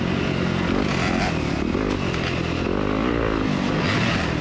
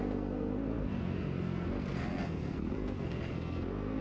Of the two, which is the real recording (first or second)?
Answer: first